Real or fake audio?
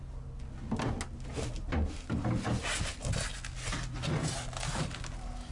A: real